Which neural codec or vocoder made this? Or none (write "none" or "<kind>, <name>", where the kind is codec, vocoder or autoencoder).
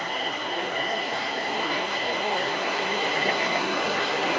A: codec, SNAC